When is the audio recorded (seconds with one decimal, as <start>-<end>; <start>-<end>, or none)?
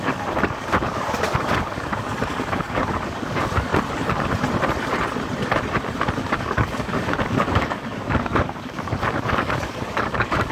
3.7-6.3